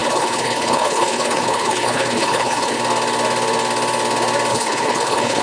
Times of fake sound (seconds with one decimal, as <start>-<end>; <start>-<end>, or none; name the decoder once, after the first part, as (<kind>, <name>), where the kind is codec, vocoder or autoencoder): 0.0-2.8 (codec, HILCodec); 4.5-5.4